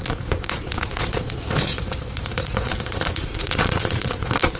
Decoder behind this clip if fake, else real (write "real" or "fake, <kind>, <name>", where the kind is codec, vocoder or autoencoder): fake, vocoder, Vocos